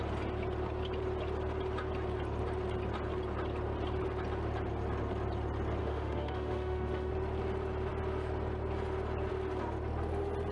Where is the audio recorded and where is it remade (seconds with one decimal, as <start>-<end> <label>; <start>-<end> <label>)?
0.0-5.8 recorded; 5.8-7.1 remade; 7.1-10.5 recorded